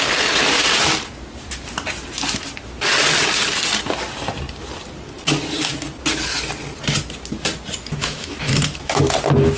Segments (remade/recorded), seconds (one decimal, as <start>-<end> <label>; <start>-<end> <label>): 0.0-8.0 recorded; 8.0-9.0 remade; 9.0-9.6 recorded